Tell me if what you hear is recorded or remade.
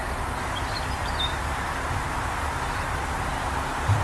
recorded